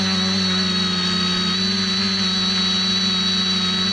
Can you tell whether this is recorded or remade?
recorded